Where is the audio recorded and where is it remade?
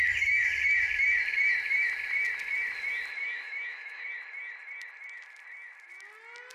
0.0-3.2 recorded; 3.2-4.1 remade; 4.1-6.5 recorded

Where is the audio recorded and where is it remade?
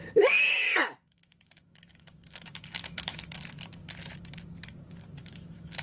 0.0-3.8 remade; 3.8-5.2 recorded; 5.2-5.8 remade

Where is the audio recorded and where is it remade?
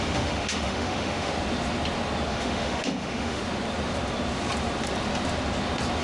0.0-1.3 remade; 1.3-2.3 recorded; 2.3-3.4 remade; 3.4-6.0 recorded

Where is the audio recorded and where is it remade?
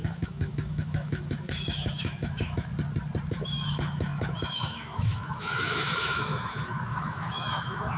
0.0-2.7 remade; 2.7-3.3 recorded; 3.3-8.0 remade